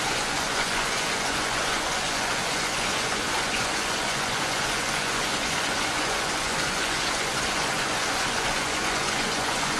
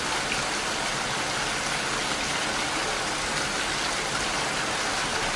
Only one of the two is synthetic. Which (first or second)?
first